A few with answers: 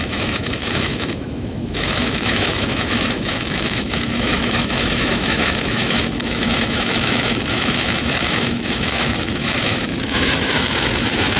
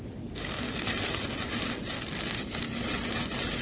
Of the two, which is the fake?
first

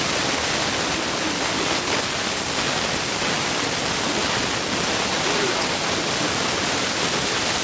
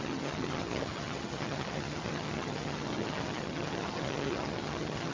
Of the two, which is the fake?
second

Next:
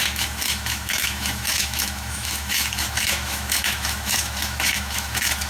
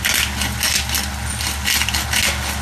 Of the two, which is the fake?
first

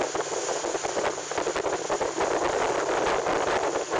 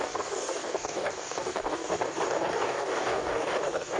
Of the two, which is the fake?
second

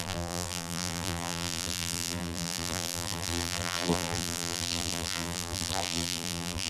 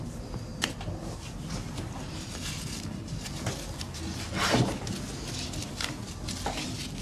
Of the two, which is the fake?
first